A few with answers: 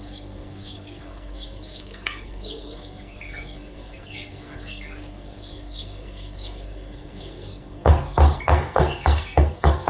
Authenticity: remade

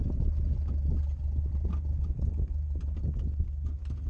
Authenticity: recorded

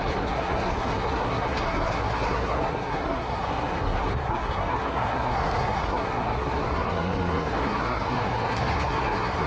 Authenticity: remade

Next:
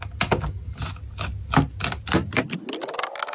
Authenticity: recorded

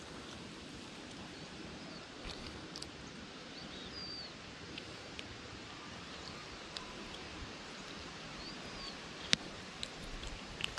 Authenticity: remade